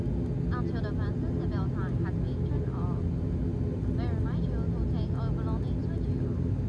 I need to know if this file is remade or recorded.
recorded